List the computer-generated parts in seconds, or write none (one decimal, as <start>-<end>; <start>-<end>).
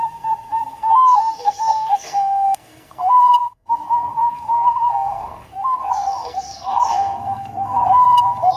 0.0-8.6